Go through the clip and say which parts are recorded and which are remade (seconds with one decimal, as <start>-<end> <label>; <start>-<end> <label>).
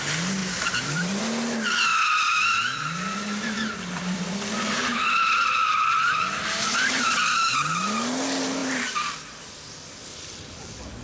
0.0-0.4 recorded; 0.4-1.2 remade; 1.2-1.9 recorded; 1.9-7.0 remade; 7.0-8.6 recorded; 8.6-9.4 remade; 9.4-11.0 recorded